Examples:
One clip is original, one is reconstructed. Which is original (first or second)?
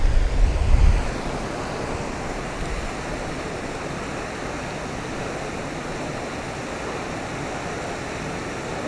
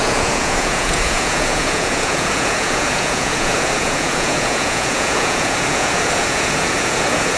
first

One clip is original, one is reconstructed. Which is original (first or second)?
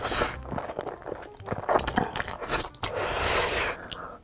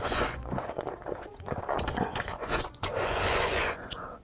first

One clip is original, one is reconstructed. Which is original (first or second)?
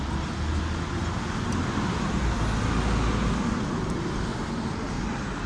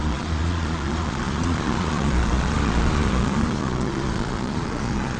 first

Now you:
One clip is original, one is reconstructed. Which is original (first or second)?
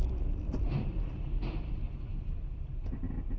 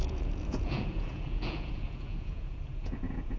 first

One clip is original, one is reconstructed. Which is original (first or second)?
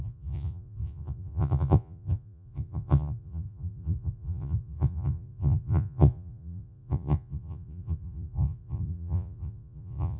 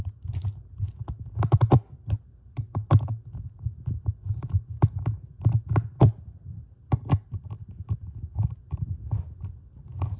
second